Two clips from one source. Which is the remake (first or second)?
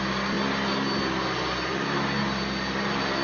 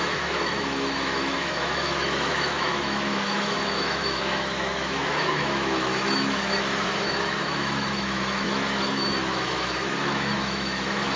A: second